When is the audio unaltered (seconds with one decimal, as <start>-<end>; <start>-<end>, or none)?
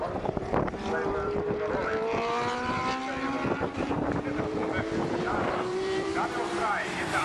2.8-3.6; 4.6-5.1